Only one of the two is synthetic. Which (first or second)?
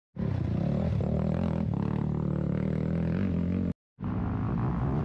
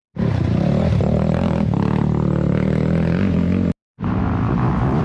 second